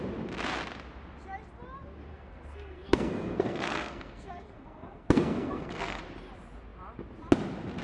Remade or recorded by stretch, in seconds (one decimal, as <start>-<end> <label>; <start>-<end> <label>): 0.0-2.1 recorded; 2.1-6.0 remade; 6.0-7.8 recorded